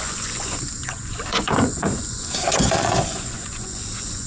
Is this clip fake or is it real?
fake